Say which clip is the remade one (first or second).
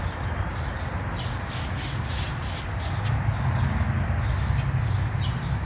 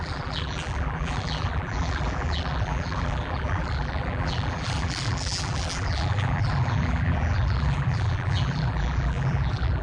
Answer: second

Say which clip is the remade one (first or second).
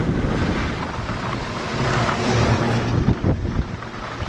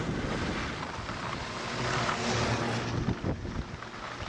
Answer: first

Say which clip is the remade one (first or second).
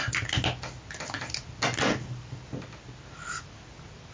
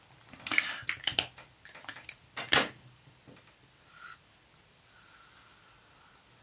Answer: second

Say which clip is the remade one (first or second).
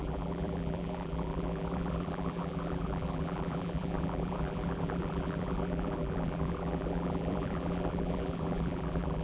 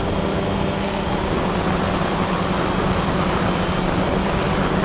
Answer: first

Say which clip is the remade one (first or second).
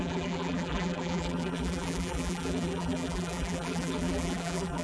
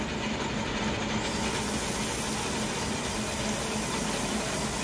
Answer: first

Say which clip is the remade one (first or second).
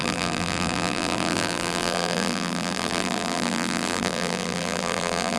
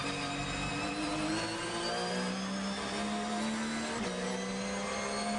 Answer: first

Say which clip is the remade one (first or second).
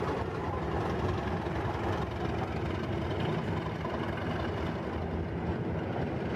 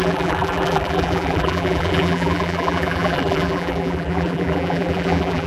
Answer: second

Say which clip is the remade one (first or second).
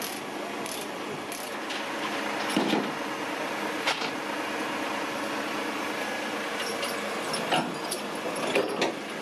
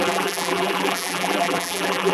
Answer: second